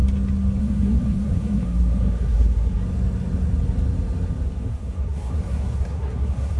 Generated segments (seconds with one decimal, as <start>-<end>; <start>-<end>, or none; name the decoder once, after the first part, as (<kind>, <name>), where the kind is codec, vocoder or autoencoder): 0.6-2.8 (codec, SNAC); 4.7-6.6